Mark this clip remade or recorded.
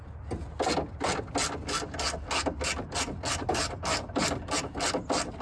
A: recorded